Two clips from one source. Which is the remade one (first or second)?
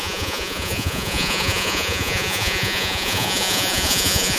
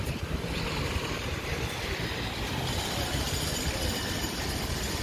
first